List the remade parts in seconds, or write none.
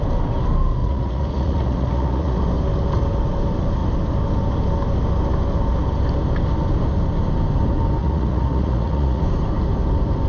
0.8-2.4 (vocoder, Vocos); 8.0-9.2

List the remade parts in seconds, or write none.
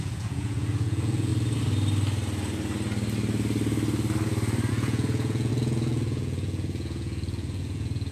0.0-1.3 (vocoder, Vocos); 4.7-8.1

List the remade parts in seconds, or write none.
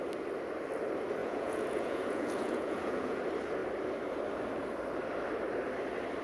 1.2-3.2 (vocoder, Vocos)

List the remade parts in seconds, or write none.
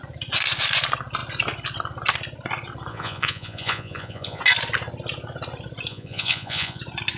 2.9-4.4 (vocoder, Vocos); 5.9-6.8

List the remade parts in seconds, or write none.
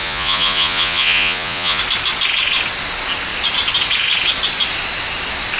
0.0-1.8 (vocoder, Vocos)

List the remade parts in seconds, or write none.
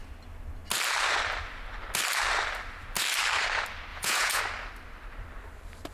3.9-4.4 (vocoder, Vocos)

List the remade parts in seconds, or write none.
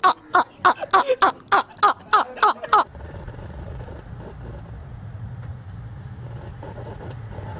2.9-4.1 (vocoder, Vocos); 4.8-5.6; 6.5-7.6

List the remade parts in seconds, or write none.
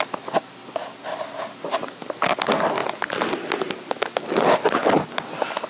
none